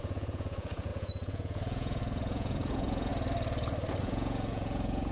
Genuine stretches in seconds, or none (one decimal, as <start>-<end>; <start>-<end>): 3.1-4.0